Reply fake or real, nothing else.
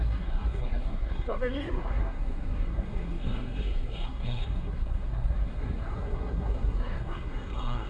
fake